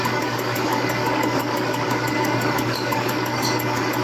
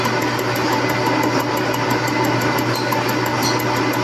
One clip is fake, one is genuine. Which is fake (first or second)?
first